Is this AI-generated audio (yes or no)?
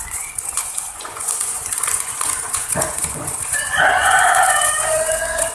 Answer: yes